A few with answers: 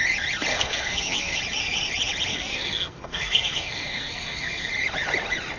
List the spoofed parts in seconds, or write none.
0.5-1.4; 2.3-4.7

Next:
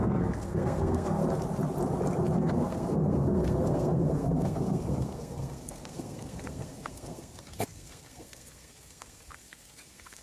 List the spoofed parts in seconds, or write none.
0.0-1.2; 2.4-10.2

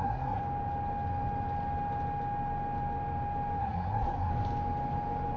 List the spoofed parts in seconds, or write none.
0.0-0.4; 3.6-4.3

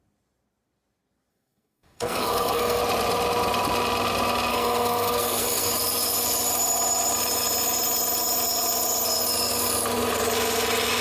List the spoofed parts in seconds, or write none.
1.3-2.8; 4.5-5.7